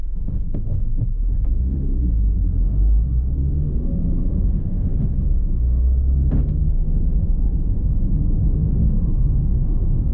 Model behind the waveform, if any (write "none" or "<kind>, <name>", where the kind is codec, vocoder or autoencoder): autoencoder, DAC-VAE